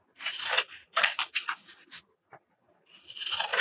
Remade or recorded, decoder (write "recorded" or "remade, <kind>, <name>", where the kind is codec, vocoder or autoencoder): recorded